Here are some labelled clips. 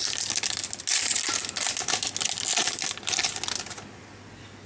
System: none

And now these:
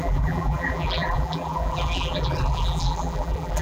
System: vocoder, BigVGAN v2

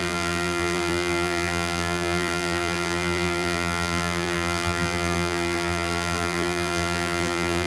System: vocoder, BigVGAN v2